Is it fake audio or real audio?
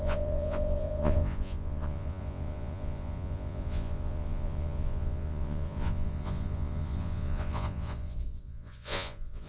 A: fake